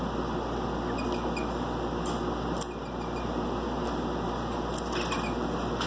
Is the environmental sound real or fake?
real